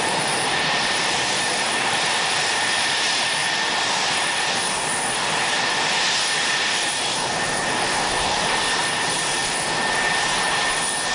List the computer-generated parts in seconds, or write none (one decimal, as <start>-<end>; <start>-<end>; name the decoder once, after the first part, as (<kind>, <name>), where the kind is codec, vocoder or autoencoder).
0.0-3.4 (vocoder, BigVGAN v2); 6.1-9.4; 10.0-11.1